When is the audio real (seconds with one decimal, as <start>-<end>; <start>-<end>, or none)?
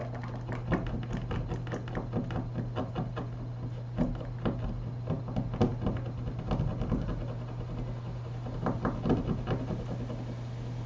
0.0-10.9